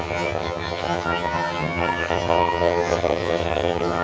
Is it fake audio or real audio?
fake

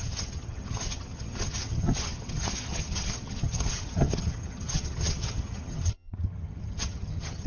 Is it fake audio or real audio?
fake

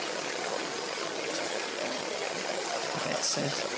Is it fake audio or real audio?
fake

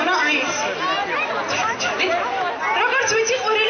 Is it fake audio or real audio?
real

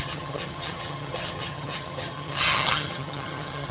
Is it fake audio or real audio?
fake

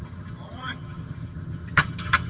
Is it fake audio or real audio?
fake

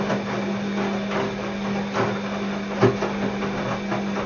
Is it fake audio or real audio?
real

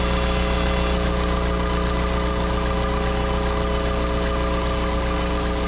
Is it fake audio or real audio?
real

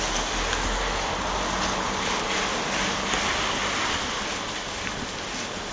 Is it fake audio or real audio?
real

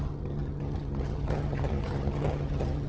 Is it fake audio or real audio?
fake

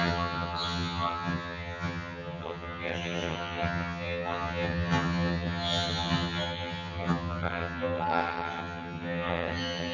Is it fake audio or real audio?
fake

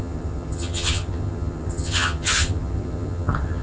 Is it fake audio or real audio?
fake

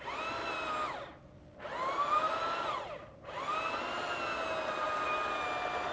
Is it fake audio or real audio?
real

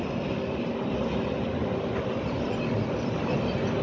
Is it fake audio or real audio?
real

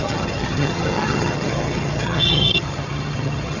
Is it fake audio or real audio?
fake